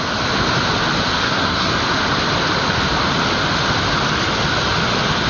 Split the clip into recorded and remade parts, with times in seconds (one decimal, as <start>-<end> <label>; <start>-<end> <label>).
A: 0.0-1.2 recorded; 1.2-1.7 remade; 1.7-5.3 recorded